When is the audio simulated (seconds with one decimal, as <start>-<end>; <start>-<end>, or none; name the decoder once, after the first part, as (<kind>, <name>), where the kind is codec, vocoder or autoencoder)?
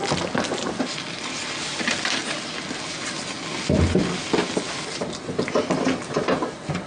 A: none